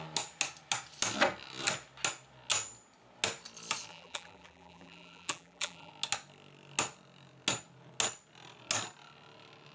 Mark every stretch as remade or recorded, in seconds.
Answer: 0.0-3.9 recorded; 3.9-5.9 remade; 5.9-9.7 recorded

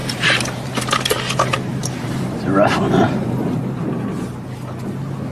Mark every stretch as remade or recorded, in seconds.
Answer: 0.0-1.8 recorded; 1.8-3.8 remade; 3.8-5.3 recorded

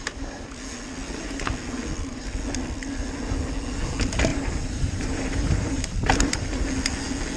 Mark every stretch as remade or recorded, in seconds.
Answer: 0.0-4.3 recorded; 4.3-6.6 remade; 6.6-7.4 recorded

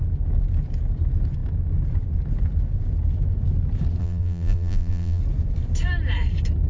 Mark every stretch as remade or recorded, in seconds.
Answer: 0.0-4.0 recorded; 4.0-5.2 remade; 5.2-6.7 recorded

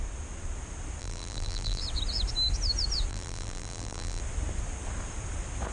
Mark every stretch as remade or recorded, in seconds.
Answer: 0.0-1.0 recorded; 1.0-1.8 remade; 1.8-3.1 recorded; 3.1-4.2 remade; 4.2-5.7 recorded

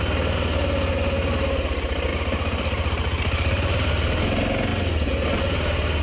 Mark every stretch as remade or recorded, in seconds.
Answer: 0.0-2.1 recorded; 2.1-3.9 remade; 3.9-6.0 recorded

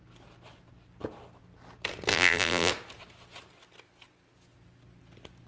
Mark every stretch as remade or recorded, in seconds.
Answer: 0.0-2.1 recorded; 2.1-2.7 remade; 2.7-5.5 recorded